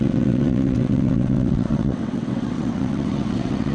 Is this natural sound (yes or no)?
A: no